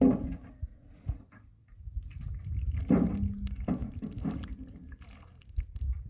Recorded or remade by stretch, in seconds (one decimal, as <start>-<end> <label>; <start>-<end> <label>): 0.0-0.7 recorded; 0.7-1.2 remade; 1.2-1.6 recorded; 1.6-2.3 remade; 2.3-6.1 recorded